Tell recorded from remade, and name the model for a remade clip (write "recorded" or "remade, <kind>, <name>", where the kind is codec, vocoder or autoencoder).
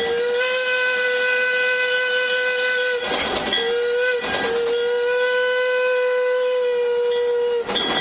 recorded